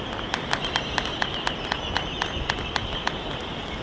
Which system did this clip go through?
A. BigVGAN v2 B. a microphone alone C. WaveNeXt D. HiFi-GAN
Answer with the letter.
B